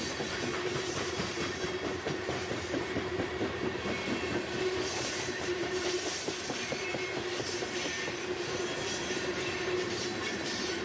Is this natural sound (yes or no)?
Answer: no